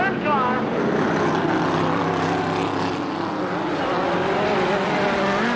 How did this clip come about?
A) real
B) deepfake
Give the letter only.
A